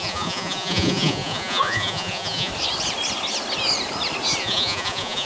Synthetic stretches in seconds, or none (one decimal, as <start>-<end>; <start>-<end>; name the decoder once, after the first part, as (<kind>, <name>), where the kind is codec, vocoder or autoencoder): 0.0-2.5 (vocoder, Vocos); 4.4-5.3